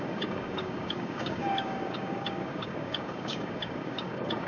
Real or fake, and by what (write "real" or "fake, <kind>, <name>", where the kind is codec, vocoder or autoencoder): fake, codec, DAC